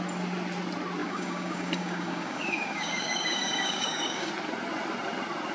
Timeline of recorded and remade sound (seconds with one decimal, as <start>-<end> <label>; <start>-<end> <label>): 0.0-1.0 recorded; 1.0-4.3 remade; 4.3-5.5 recorded